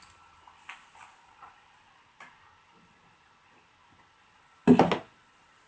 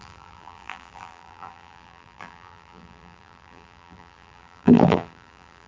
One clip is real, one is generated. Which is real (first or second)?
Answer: first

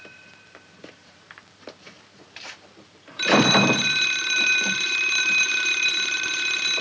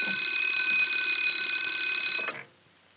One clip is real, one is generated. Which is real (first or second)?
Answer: second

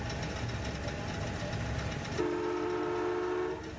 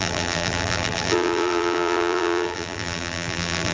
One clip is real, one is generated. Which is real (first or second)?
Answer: first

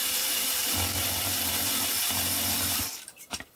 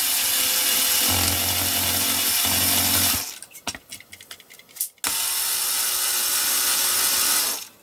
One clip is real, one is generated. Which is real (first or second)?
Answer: second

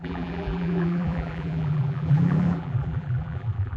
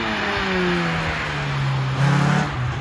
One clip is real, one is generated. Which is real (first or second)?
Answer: second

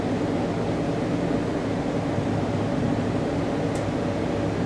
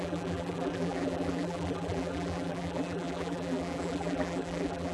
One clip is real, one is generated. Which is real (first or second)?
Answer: first